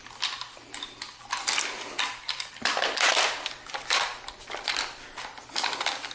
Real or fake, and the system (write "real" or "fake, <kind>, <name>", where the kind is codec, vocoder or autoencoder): fake, vocoder, BigVGAN v2